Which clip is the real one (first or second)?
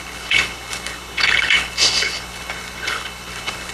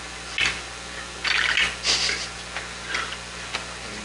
second